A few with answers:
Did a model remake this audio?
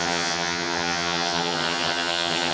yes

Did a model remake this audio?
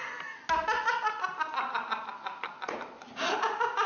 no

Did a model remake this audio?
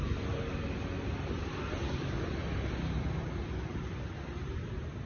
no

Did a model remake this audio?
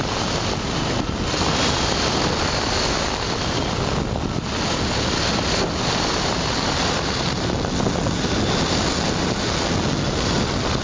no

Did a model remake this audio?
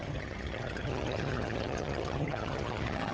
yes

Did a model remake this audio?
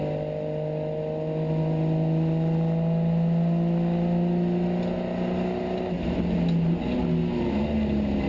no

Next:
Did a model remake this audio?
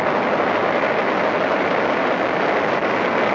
no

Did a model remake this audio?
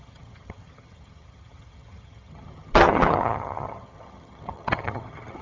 yes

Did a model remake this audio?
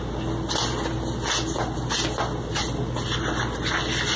no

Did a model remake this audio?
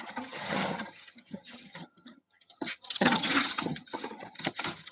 yes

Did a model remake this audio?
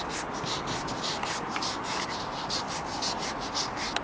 no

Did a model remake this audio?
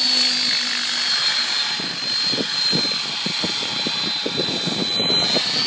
no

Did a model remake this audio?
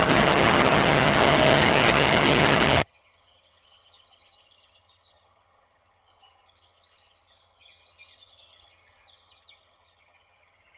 yes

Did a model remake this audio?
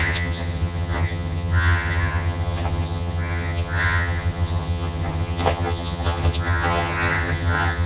yes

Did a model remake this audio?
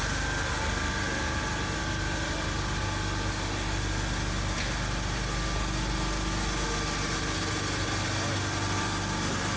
no